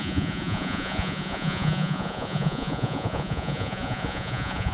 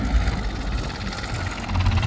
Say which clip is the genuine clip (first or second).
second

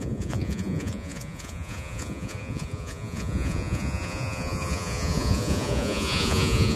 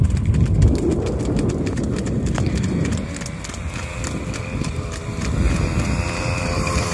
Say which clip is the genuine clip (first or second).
second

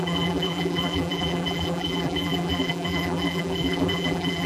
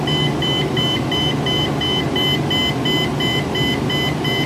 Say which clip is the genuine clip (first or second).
second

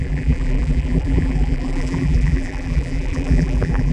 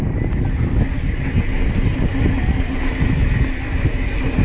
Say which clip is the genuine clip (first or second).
second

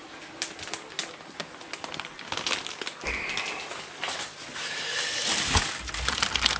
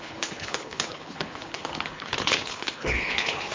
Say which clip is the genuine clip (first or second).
first